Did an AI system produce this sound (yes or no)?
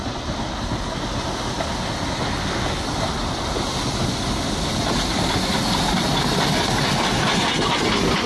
no